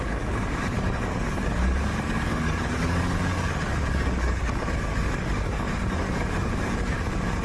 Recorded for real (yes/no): no